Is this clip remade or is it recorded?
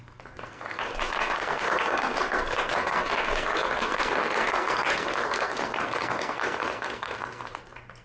remade